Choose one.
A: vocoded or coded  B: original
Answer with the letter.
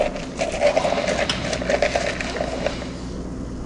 B